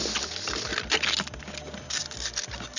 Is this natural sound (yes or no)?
yes